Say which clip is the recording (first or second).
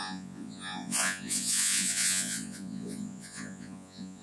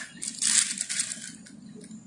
second